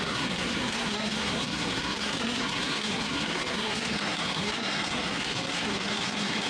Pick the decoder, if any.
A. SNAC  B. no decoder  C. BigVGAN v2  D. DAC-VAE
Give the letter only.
A